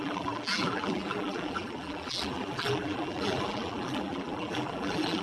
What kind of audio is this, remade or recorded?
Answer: remade